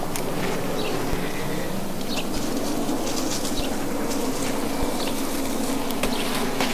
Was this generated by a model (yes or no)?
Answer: no